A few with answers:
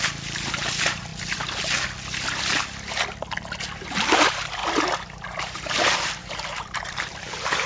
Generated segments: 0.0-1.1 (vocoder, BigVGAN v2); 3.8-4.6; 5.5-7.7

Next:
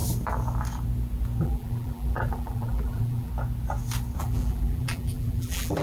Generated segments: 1.4-3.3 (vocoder, BigVGAN v2); 4.2-5.8

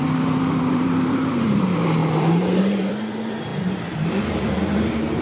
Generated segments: 0.0-2.0 (vocoder, BigVGAN v2); 2.6-5.2

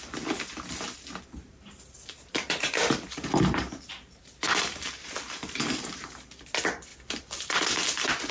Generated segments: 1.4-6.4 (vocoder, BigVGAN v2)

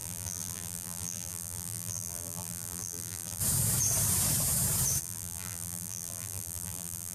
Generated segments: 0.0-3.4 (vocoder, BigVGAN v2); 5.0-7.1

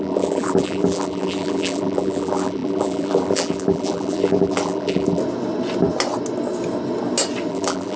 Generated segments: 0.0-5.2 (vocoder, BigVGAN v2); 7.5-8.0

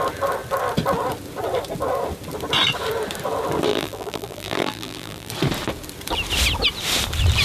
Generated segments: 3.7-5.3 (vocoder, BigVGAN v2)

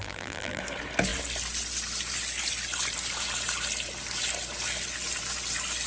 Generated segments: 0.0-0.6 (vocoder, BigVGAN v2)